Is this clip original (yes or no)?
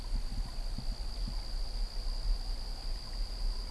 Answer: yes